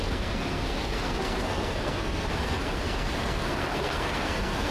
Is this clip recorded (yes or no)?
no